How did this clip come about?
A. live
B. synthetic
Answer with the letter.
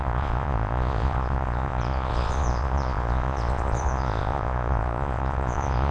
B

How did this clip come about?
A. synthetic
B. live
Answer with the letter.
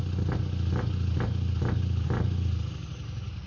B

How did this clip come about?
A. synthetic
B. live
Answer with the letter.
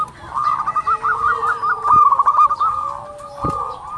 B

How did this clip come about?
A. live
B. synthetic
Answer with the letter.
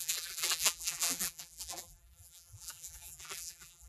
B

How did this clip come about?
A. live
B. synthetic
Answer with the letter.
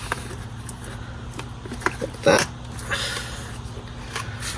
A